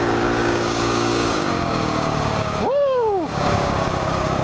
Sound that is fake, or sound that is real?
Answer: fake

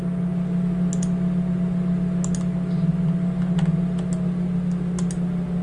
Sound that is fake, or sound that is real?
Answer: real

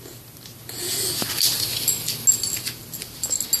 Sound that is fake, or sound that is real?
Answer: real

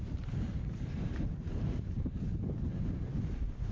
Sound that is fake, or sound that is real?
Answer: real